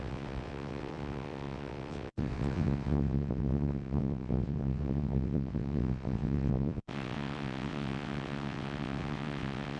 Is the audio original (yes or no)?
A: no